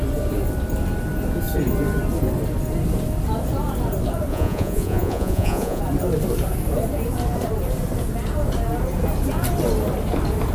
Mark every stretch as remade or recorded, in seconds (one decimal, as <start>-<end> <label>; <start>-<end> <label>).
0.0-4.3 recorded; 4.3-5.8 remade; 5.8-10.5 recorded